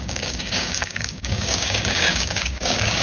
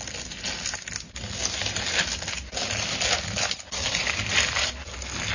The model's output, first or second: first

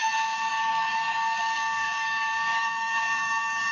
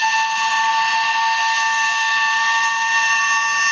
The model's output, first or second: first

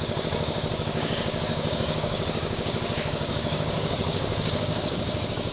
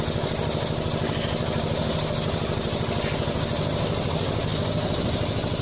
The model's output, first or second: first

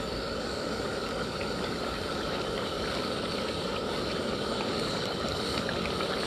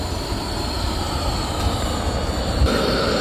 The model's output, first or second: first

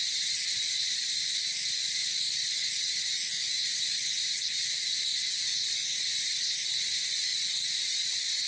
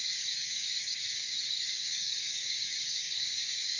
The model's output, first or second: second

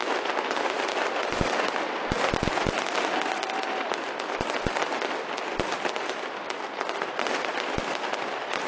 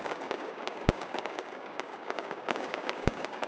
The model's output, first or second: second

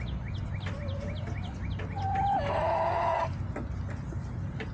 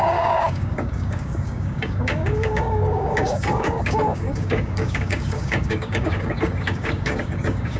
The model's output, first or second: second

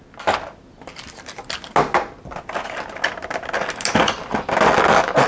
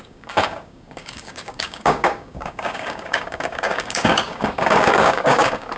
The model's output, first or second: second